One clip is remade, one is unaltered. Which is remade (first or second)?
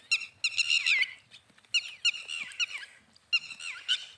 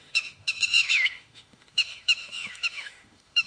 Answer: second